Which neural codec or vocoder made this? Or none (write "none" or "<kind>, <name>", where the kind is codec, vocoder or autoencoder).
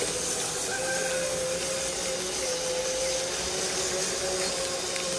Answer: none